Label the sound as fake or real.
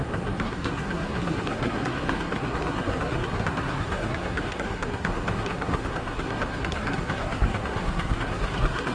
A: fake